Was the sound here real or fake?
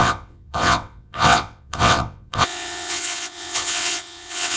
fake